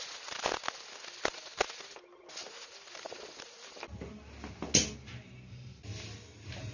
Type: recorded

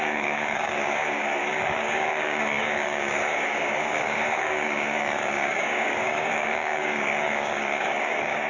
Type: remade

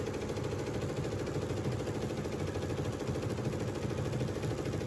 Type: recorded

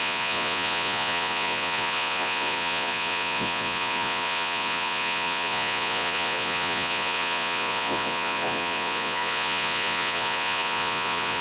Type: remade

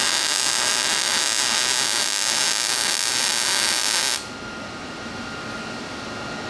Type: recorded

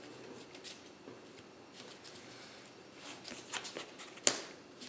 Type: recorded